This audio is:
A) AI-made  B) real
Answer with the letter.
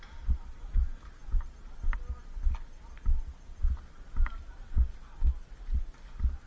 B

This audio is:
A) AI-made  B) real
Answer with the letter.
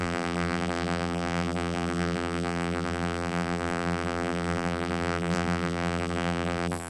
A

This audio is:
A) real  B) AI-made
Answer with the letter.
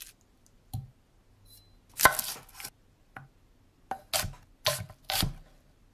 A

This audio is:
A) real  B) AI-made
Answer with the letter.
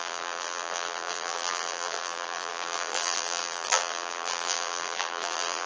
B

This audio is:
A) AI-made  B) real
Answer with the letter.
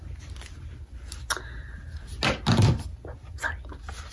B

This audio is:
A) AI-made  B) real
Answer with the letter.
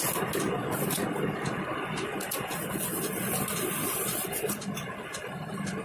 B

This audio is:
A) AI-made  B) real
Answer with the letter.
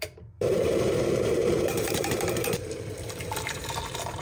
A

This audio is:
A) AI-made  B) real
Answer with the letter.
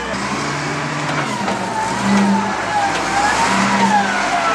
B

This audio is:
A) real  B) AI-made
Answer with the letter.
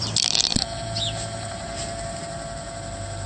A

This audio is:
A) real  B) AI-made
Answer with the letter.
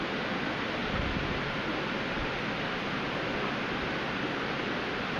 A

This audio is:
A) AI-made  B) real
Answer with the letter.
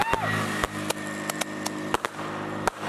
B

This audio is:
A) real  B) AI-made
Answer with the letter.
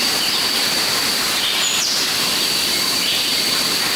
A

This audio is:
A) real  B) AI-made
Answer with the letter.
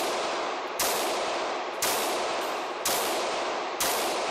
B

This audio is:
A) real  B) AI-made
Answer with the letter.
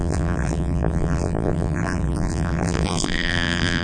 B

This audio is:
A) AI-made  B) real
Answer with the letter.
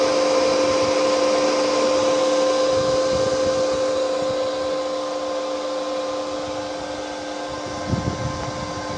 B